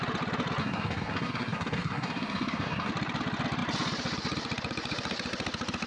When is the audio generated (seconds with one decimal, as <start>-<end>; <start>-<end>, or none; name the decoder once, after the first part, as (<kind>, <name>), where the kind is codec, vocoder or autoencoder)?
0.6-2.9 (codec, SNAC)

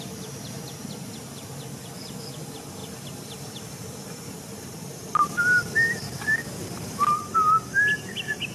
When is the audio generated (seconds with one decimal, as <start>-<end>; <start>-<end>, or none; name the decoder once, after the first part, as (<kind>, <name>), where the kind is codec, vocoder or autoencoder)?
2.8-6.4 (vocoder, BigVGAN v2)

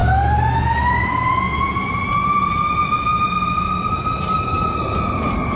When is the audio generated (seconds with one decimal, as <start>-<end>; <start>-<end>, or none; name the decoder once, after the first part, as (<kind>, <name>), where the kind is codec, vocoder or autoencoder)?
none

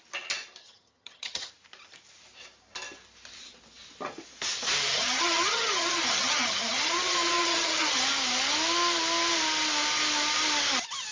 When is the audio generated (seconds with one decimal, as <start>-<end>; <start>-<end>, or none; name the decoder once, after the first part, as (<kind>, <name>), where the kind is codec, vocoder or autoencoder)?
0.6-1.5 (vocoder, HiFi-GAN); 4.9-8.0

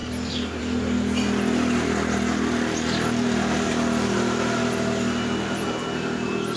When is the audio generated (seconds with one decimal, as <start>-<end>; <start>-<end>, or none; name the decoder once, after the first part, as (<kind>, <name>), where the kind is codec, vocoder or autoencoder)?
none